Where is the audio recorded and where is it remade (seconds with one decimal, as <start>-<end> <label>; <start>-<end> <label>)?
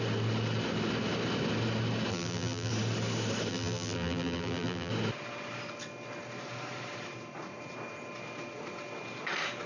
0.0-2.1 recorded; 2.1-2.7 remade; 2.7-3.5 recorded; 3.5-4.9 remade; 4.9-9.7 recorded